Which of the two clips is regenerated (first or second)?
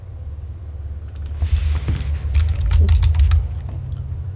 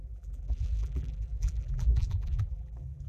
second